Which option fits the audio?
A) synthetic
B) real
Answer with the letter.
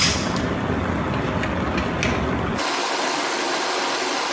B